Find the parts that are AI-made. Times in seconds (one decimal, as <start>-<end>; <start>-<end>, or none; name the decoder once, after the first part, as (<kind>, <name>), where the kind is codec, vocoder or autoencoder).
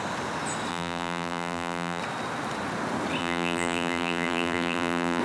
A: 0.7-2.0 (vocoder, BigVGAN v2); 3.2-5.2